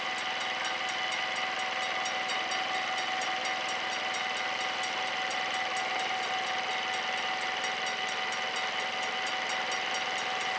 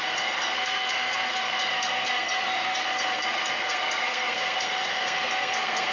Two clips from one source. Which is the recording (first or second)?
first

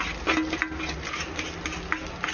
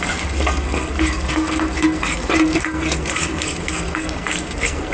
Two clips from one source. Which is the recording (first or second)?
first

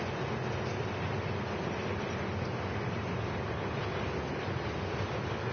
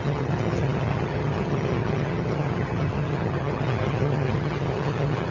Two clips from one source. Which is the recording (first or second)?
first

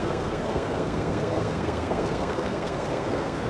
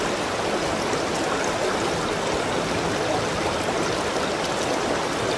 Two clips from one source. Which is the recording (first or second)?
second